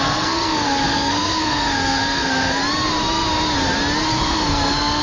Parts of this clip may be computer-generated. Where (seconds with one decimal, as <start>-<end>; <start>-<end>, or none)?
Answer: 0.0-2.6; 4.1-5.0